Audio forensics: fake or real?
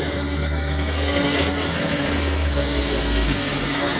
fake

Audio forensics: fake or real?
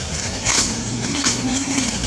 fake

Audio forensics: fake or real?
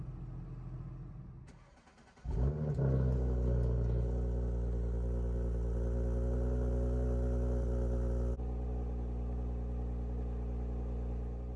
real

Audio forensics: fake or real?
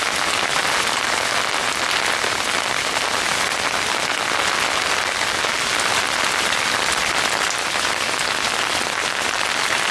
real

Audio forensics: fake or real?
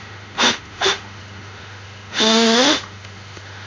fake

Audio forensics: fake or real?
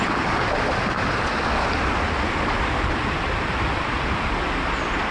real